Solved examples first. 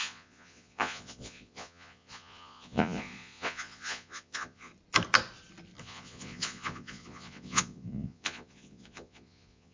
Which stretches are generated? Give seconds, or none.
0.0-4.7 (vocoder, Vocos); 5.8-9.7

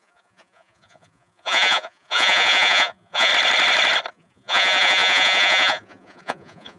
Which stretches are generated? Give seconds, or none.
0.0-3.3 (vocoder, Vocos); 4.1-6.8

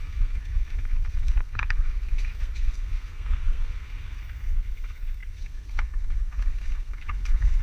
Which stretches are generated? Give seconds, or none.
0.0-7.6 (codec, SNAC)

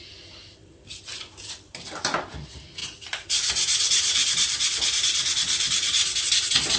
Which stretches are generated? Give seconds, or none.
1.1-2.3 (vocoder, BigVGAN v2); 2.8-6.2

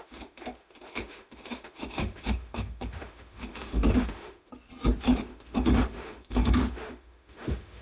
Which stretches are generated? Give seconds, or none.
0.0-4.5 (autoencoder, DAC-VAE); 5.0-7.8

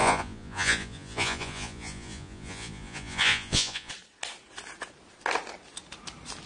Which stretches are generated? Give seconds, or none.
0.0-3.9 (vocoder, Vocos)

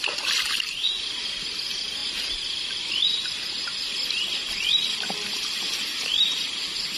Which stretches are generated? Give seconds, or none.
2.0-2.8 (vocoder, BigVGAN v2)

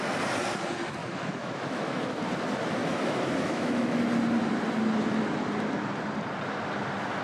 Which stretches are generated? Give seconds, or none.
1.0-2.0 (autoencoder, DAC-VAE); 2.8-4.0